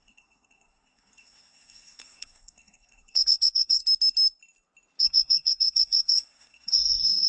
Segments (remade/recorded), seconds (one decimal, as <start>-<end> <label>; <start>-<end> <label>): 0.0-3.8 remade; 3.8-5.0 recorded; 5.0-7.3 remade